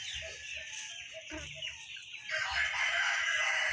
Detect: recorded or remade recorded